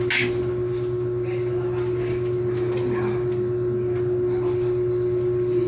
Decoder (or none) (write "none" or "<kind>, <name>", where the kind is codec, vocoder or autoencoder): none